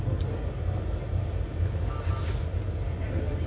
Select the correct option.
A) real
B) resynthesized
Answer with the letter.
A